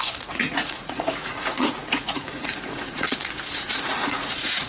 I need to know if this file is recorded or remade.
remade